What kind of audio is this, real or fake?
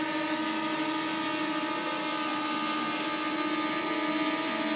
real